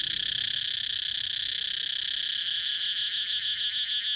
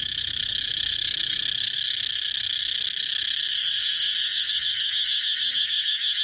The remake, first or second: second